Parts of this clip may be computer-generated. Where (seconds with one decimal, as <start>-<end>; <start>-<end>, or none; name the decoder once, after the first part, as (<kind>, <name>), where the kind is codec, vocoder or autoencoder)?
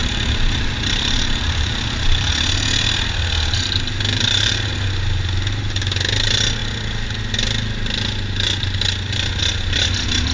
0.0-2.3 (vocoder, BigVGAN v2); 4.1-4.7